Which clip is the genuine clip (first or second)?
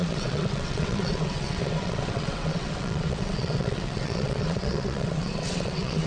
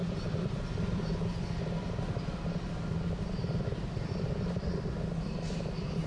second